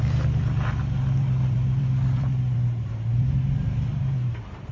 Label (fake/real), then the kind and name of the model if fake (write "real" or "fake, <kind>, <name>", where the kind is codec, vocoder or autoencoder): fake, vocoder, BigVGAN v2